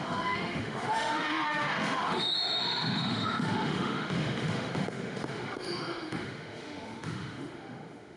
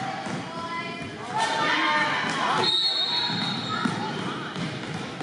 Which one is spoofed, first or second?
first